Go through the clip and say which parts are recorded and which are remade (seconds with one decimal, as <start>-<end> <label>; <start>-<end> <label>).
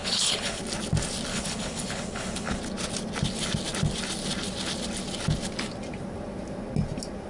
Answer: 0.0-0.6 remade; 0.6-1.3 recorded; 1.3-2.6 remade; 2.6-7.3 recorded